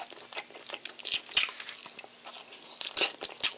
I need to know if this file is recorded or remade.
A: recorded